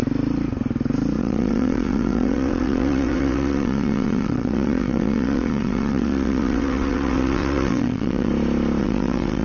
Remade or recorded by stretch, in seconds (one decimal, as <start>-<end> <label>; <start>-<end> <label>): 0.0-1.2 recorded; 1.2-8.3 remade; 8.3-8.8 recorded; 8.8-9.4 remade